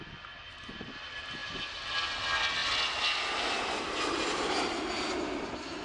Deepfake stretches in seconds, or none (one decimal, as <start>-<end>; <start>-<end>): none